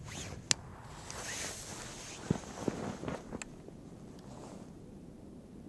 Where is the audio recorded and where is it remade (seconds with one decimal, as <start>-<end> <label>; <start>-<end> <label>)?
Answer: 0.0-5.7 recorded